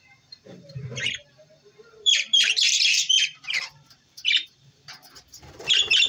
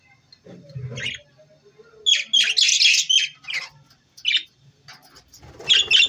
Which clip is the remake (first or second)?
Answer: first